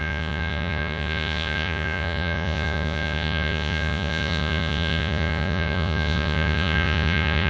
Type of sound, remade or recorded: remade